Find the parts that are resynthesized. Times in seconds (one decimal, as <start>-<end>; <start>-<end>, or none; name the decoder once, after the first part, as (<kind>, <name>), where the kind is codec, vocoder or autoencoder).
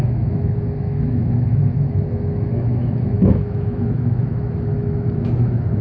0.0-5.8 (autoencoder, DAC-VAE)